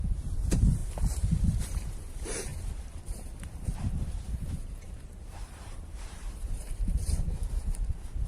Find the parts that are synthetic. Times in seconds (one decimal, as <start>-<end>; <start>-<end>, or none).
0.0-0.8; 1.6-8.3